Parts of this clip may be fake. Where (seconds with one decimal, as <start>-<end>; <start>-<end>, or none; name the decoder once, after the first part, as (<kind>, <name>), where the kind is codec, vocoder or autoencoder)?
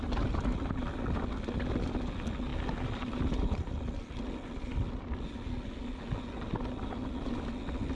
none